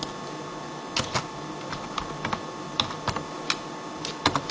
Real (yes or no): yes